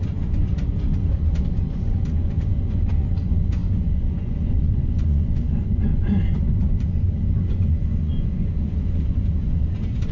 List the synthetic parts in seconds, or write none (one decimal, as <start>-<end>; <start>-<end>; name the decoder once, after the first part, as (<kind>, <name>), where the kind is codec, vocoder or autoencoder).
0.0-10.1 (vocoder, Vocos)